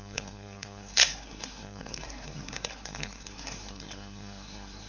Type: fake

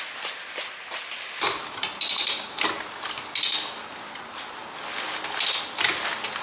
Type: real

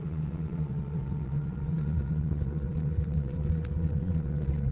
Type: fake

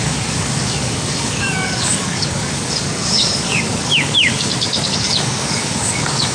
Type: fake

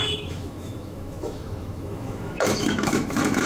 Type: fake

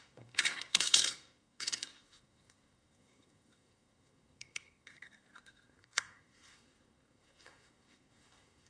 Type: fake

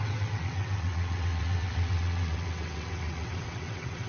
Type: fake